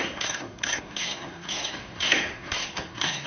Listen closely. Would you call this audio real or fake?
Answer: fake